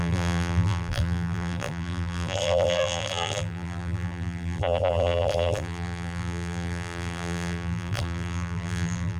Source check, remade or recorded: remade